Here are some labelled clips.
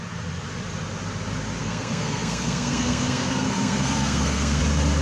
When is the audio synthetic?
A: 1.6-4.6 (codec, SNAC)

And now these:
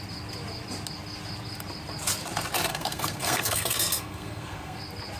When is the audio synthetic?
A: 2.7-4.8 (codec, SNAC)